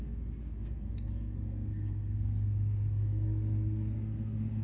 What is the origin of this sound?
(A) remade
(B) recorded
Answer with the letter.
A